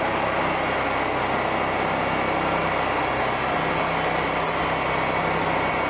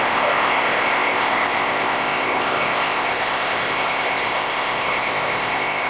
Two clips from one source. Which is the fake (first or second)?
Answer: second